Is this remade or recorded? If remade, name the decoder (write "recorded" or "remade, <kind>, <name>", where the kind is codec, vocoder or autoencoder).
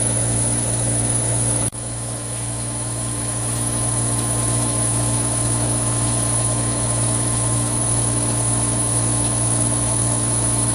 remade, autoencoder, DAC-VAE